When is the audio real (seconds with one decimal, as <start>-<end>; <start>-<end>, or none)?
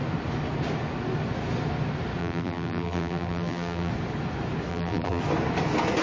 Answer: 0.0-2.2; 3.9-4.7; 5.2-6.0